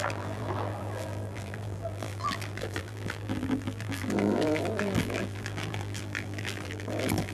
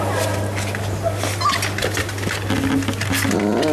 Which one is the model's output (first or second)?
first